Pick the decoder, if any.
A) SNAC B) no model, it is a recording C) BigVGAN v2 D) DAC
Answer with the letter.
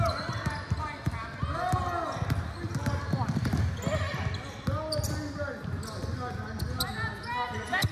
B